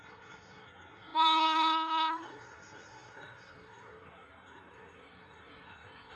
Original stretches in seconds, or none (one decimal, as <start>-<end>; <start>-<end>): none